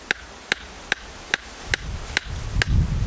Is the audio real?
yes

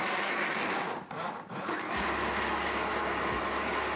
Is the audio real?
yes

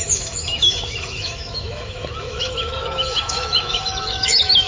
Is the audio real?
no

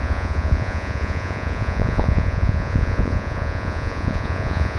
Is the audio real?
no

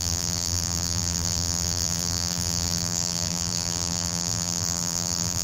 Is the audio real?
no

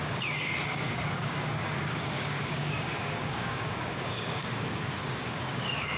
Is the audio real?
no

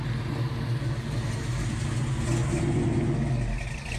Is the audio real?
yes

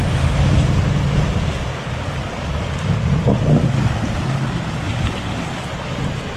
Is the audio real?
yes